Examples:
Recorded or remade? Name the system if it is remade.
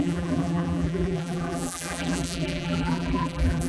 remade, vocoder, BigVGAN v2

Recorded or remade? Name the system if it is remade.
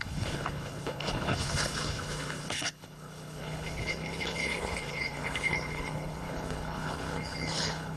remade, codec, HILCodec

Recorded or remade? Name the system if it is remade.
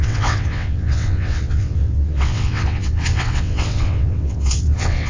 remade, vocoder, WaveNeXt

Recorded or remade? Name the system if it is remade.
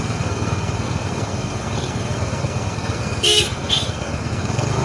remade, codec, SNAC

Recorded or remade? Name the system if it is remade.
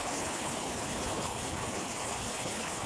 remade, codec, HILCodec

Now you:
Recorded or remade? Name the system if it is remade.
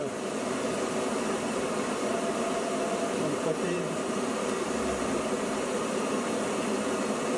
remade, vocoder, BigVGAN v2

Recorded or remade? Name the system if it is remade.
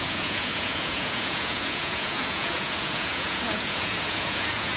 remade, vocoder, Vocos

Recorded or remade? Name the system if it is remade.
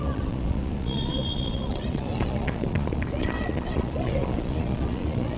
remade, vocoder, Vocos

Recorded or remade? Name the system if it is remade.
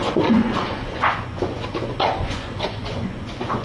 remade, vocoder, Vocos